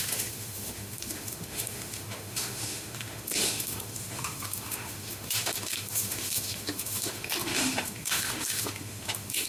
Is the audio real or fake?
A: fake